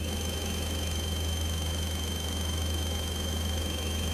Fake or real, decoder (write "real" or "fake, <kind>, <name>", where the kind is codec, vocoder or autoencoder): fake, autoencoder, DAC-VAE